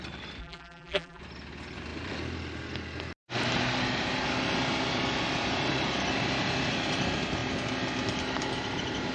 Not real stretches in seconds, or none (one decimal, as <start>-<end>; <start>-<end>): 0.4-1.2